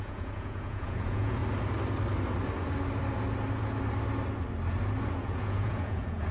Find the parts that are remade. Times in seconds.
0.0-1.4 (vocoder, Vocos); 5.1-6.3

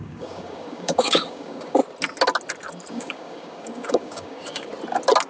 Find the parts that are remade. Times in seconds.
0.0-1.8 (codec, DAC); 2.9-4.7